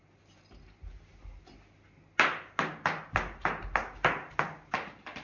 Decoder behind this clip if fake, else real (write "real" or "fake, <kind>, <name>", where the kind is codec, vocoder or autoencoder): real